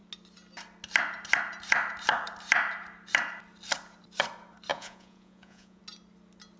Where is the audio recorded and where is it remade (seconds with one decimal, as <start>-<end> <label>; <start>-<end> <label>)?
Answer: 0.0-4.7 recorded; 4.7-5.8 remade; 5.8-6.6 recorded